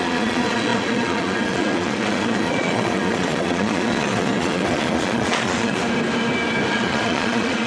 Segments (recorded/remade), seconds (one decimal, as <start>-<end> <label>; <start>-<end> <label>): 0.0-5.8 remade; 5.8-6.7 recorded; 6.7-7.7 remade